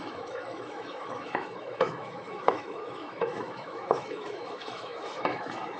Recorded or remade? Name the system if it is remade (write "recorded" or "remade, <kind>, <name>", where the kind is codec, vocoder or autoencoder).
remade, autoencoder, DAC-VAE